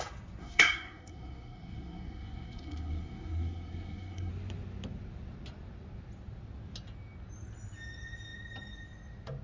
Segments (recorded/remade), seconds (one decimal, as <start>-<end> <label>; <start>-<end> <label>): 0.0-0.4 recorded; 0.4-4.3 remade; 4.3-9.4 recorded